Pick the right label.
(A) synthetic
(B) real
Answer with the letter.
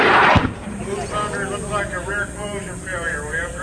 B